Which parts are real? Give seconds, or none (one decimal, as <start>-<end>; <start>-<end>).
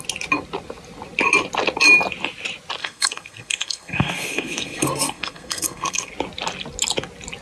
0.0-2.8; 6.1-7.4